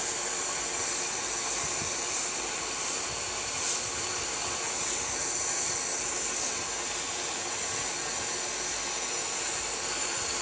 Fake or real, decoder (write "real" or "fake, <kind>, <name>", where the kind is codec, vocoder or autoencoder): real